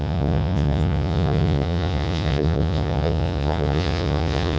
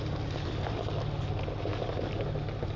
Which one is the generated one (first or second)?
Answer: first